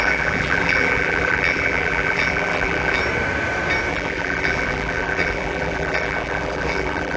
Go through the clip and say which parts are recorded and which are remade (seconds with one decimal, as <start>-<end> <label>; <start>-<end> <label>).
0.0-3.0 remade; 3.0-3.9 recorded; 3.9-7.2 remade